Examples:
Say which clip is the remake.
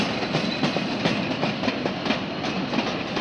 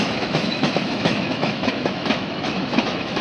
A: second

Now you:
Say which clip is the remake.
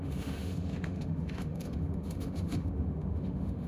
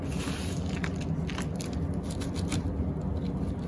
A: first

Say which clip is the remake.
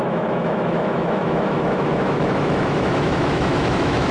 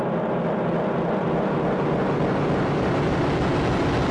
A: first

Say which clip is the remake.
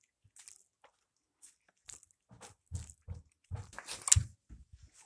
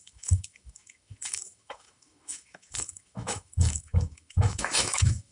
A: second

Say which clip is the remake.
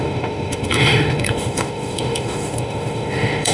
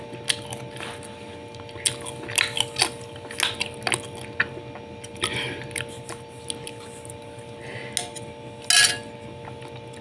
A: first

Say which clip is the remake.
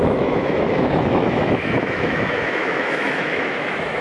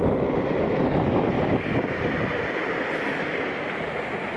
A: first